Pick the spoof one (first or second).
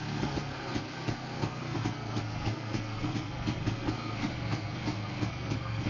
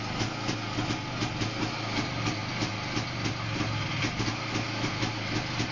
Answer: first